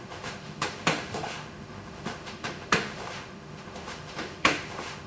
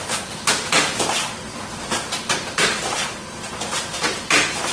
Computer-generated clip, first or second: first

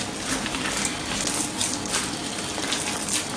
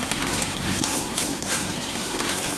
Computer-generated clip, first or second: second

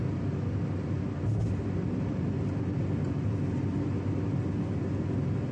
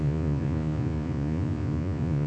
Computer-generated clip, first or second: second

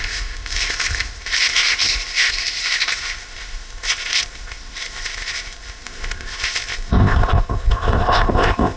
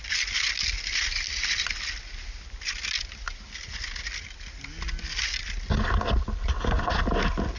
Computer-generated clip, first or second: first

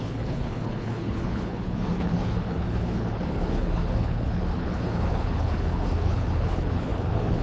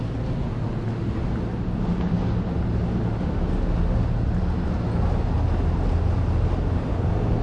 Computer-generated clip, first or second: first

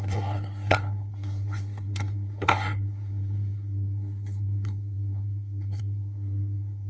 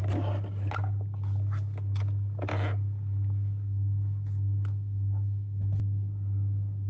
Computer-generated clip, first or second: first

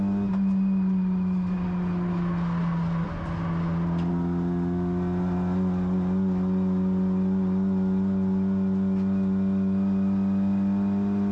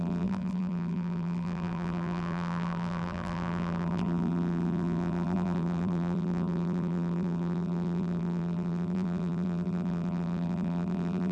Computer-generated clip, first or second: second